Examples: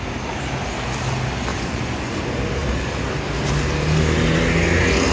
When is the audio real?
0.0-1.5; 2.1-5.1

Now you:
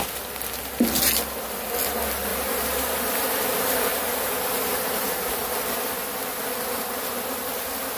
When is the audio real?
0.0-2.3; 5.6-8.0

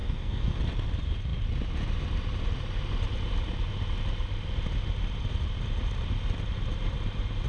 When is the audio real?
0.6-7.5

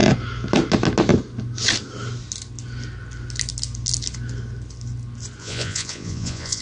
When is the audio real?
0.0-5.4

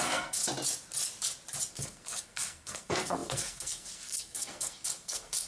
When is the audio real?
0.4-1.7